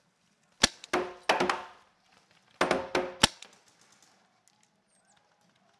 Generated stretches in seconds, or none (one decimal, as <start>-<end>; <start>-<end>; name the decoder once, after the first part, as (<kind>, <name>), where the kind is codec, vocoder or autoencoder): none